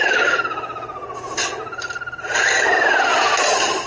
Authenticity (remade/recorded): recorded